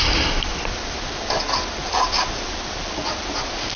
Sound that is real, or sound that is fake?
real